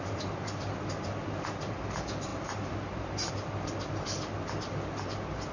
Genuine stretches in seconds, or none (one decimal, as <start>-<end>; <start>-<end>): 0.0-5.5